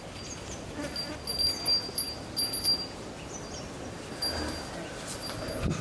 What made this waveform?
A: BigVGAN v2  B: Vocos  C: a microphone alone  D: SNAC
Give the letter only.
C